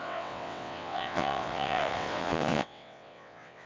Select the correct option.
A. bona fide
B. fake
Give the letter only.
B